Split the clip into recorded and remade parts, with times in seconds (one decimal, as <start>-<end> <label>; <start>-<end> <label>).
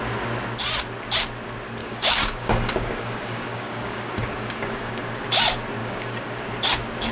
0.0-1.8 recorded; 1.8-5.0 remade; 5.0-5.8 recorded; 5.8-6.4 remade; 6.4-7.1 recorded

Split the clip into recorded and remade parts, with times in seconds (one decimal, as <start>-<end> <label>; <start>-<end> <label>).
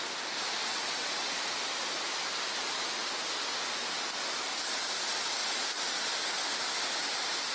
0.0-0.6 recorded; 0.6-1.3 remade; 1.3-7.5 recorded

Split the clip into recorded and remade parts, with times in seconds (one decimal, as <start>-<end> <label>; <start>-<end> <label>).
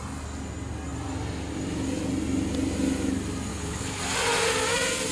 0.0-3.5 recorded; 3.5-4.0 remade; 4.0-5.1 recorded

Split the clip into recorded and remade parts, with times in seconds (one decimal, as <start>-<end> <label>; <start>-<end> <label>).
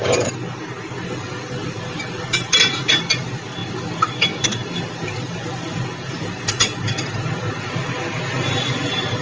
0.0-9.2 recorded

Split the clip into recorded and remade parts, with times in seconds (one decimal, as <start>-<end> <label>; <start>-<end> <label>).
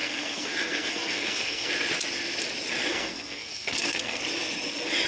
0.0-1.7 remade; 1.7-2.9 recorded; 2.9-4.2 remade; 4.2-5.1 recorded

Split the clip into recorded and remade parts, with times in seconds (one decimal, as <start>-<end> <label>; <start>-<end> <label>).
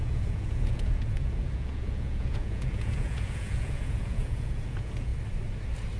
0.0-5.1 remade; 5.1-6.0 recorded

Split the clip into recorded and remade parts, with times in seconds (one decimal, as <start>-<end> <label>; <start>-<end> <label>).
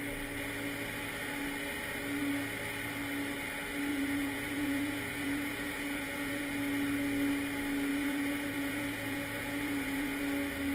0.0-3.9 recorded; 3.9-6.4 remade; 6.4-7.9 recorded; 7.9-10.2 remade; 10.2-10.7 recorded